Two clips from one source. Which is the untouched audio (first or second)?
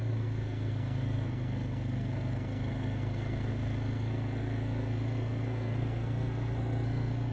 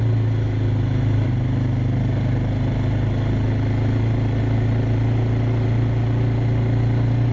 second